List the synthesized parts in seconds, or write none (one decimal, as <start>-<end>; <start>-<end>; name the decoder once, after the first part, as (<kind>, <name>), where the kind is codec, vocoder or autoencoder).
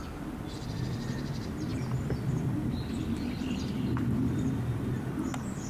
none